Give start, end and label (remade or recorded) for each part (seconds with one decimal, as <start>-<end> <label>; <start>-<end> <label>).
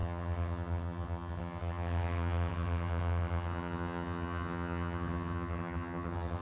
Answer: 0.0-6.4 remade